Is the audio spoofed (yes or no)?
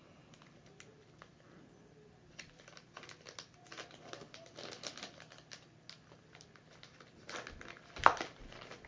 no